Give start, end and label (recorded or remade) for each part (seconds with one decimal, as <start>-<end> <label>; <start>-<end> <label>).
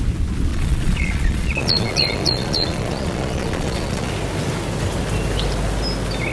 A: 0.0-0.5 recorded; 0.5-4.1 remade; 4.1-6.3 recorded